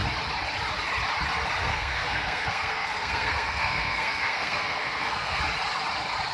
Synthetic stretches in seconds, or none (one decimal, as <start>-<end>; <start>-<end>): 1.6-5.4